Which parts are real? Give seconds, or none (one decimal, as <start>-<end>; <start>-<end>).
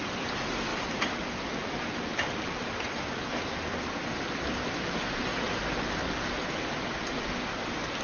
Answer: 0.0-8.0